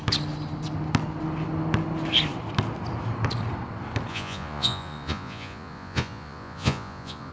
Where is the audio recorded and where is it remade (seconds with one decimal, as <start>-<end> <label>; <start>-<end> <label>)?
0.0-4.1 recorded; 4.1-7.3 remade